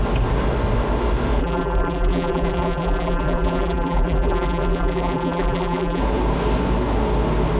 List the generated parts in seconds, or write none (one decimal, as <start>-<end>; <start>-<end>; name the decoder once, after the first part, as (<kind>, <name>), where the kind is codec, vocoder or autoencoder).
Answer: 1.4-6.0 (vocoder, BigVGAN v2)